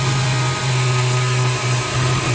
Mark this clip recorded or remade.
recorded